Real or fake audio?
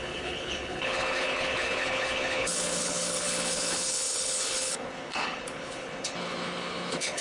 fake